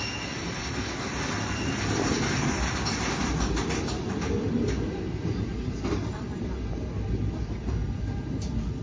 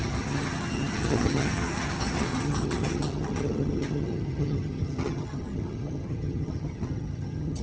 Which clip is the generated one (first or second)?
second